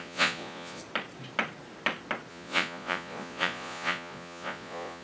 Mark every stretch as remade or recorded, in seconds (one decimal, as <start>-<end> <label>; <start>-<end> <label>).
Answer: 0.0-0.8 remade; 0.8-2.3 recorded; 2.3-5.0 remade